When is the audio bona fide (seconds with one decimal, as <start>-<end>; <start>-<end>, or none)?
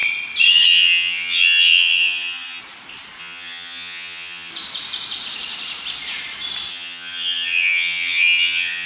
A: 0.0-0.5; 2.6-3.2; 4.5-6.7